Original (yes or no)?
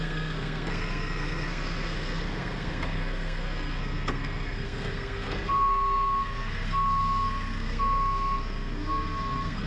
no